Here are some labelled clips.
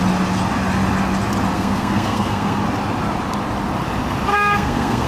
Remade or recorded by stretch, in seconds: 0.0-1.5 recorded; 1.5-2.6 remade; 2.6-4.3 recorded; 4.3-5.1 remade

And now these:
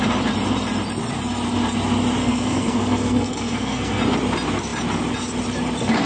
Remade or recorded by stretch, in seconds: 0.0-2.2 recorded; 2.2-4.0 remade; 4.0-6.1 recorded

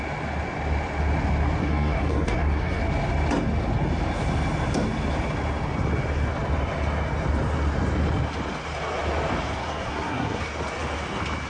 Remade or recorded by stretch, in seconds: 0.0-1.6 recorded; 1.6-2.8 remade; 2.8-9.6 recorded; 9.6-10.4 remade; 10.4-11.5 recorded

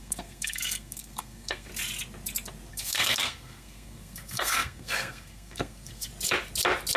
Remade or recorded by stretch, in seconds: 0.0-1.7 remade; 1.7-2.7 recorded; 2.7-6.1 remade; 6.1-7.0 recorded